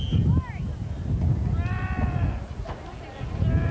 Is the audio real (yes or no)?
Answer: yes